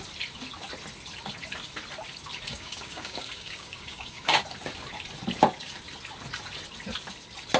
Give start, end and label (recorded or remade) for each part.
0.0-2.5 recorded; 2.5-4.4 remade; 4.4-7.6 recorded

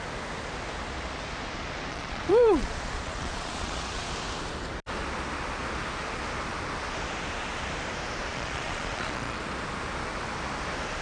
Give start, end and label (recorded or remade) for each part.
0.0-1.9 recorded; 1.9-4.1 remade; 4.1-8.3 recorded; 8.3-9.4 remade; 9.4-11.0 recorded

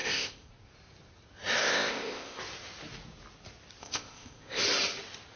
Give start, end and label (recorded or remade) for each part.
0.0-0.5 remade; 0.5-1.6 recorded; 1.6-2.4 remade; 2.4-3.8 recorded; 3.8-4.6 remade; 4.6-5.4 recorded